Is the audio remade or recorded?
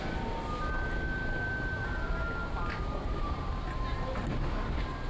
recorded